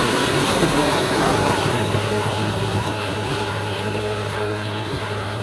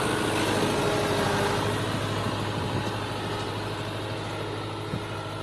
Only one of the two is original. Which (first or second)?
second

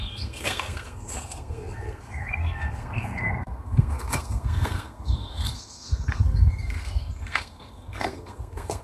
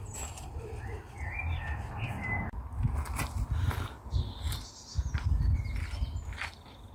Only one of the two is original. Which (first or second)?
second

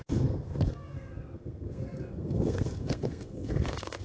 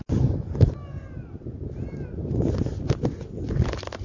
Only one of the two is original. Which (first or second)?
second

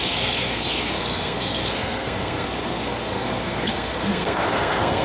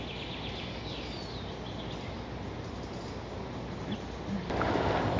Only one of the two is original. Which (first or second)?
second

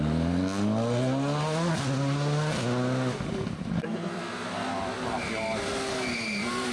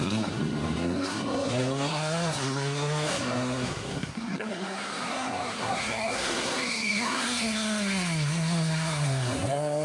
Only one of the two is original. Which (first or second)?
first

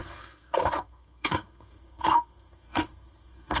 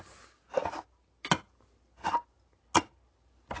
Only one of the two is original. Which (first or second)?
second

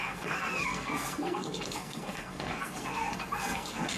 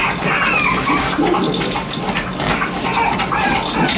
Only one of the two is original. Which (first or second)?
second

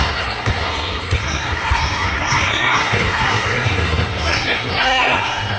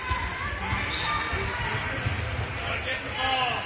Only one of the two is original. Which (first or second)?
second